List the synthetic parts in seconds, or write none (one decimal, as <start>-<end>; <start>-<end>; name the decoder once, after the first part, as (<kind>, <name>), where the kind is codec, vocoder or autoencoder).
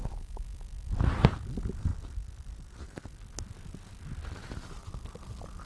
1.9-3.5 (vocoder, BigVGAN v2)